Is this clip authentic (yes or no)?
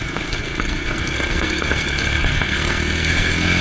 no